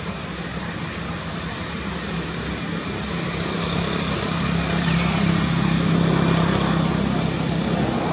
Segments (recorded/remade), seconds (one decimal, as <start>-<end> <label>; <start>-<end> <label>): 0.0-8.1 recorded